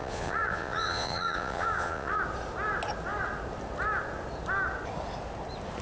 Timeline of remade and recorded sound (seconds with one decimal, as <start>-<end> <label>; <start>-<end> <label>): 0.0-2.2 remade; 2.2-5.8 recorded